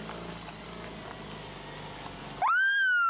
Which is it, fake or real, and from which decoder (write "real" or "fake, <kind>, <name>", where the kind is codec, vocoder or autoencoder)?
real